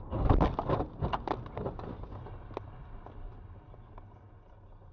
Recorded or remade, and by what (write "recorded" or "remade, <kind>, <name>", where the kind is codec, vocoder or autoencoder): recorded